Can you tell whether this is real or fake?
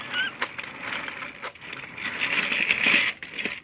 real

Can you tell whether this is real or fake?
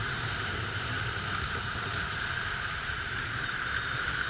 fake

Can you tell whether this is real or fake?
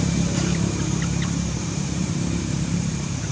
fake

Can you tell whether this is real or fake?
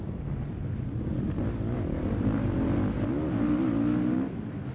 real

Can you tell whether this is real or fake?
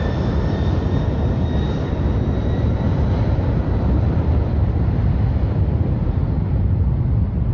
fake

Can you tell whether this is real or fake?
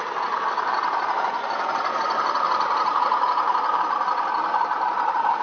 fake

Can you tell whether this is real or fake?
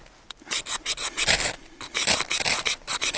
real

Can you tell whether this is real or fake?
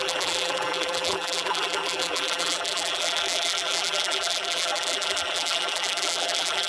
fake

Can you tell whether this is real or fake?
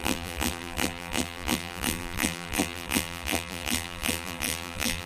fake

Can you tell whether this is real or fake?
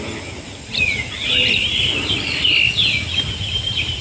fake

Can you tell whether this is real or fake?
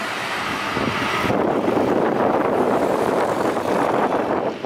fake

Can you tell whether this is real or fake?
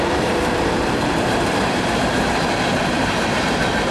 fake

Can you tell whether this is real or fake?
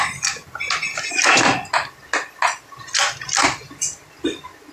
real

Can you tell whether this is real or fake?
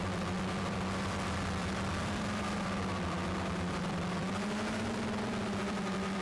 fake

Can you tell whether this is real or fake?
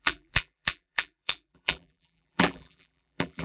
fake